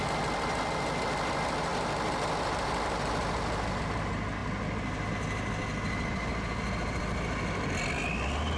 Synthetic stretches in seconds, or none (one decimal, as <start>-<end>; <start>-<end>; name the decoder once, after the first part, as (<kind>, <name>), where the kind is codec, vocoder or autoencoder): none